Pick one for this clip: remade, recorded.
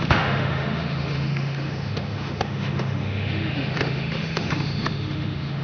remade